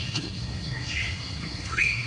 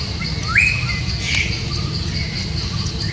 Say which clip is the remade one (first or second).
first